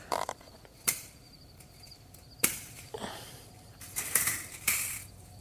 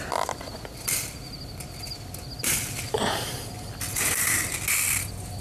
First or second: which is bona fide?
second